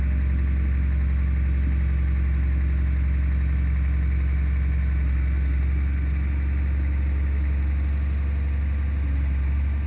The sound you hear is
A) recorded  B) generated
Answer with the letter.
A